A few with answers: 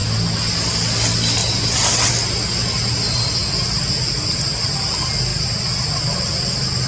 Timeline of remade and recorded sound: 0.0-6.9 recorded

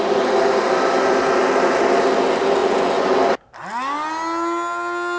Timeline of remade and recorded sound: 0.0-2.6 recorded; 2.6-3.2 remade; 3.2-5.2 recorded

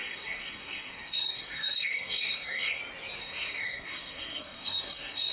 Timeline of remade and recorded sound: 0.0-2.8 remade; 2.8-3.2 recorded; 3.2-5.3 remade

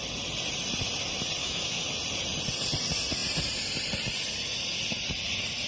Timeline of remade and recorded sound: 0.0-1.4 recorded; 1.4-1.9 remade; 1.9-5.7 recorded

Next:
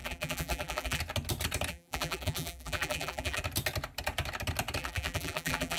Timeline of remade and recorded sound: 0.0-1.0 remade; 1.0-1.7 recorded; 1.7-3.4 remade; 3.4-4.8 recorded; 4.8-5.8 remade